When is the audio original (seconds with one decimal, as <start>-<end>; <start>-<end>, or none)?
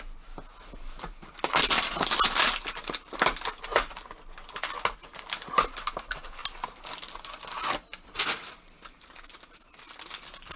0.0-10.6